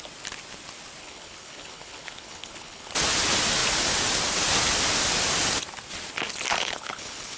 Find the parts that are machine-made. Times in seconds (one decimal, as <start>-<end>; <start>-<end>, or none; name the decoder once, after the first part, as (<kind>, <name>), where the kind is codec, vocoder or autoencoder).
1.0-2.9 (codec, HILCodec); 6.5-7.4